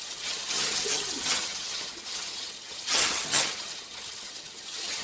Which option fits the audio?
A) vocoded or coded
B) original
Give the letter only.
A